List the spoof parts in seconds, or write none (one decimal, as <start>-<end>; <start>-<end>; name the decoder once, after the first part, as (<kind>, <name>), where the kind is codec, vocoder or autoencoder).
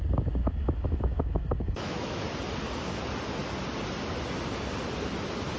0.4-2.2 (autoencoder, DAC-VAE)